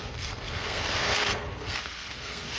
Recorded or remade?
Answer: remade